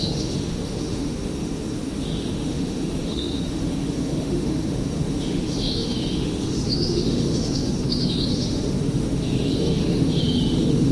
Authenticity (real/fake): fake